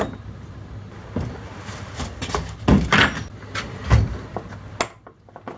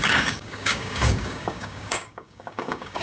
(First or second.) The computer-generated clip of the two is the second